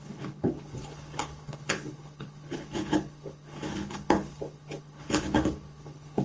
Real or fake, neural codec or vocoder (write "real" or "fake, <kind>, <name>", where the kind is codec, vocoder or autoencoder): fake, codec, HILCodec